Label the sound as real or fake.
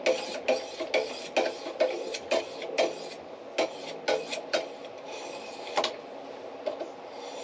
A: real